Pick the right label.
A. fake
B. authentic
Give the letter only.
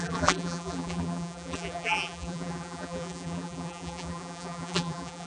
A